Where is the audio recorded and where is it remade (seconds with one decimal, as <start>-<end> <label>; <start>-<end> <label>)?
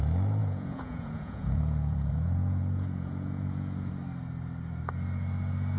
0.0-0.4 recorded; 0.4-3.9 remade; 3.9-5.8 recorded